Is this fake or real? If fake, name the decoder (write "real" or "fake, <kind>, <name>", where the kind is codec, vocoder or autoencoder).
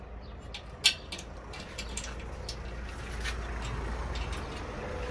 real